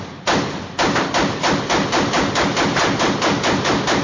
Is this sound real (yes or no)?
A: yes